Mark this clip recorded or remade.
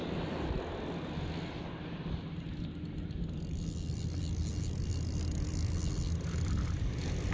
recorded